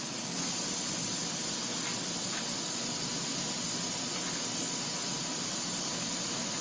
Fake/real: real